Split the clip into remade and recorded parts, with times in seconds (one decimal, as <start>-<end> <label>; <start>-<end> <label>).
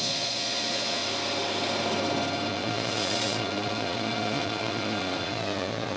0.0-1.0 remade; 1.0-2.5 recorded; 2.5-6.0 remade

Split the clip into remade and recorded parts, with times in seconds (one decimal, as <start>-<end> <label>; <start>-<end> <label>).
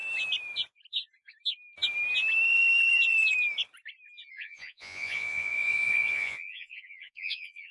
0.0-4.3 recorded; 4.3-7.7 remade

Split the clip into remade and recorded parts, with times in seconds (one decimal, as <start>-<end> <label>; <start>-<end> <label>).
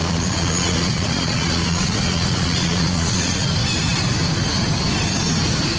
0.0-3.5 remade; 3.5-5.8 recorded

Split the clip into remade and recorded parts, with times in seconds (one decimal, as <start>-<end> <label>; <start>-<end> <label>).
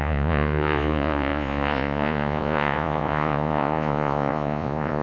0.0-5.0 remade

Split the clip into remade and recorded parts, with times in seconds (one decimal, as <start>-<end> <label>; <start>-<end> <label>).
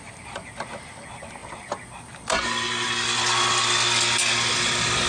0.0-5.1 recorded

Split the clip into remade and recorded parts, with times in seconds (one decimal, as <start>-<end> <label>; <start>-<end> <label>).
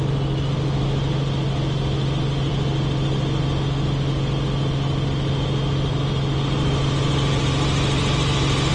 0.0-8.7 recorded